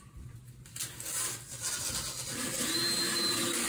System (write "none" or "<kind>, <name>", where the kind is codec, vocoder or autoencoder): none